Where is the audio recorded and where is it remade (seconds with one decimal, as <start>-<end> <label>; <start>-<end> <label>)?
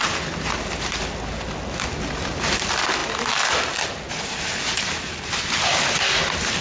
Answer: 0.0-6.6 recorded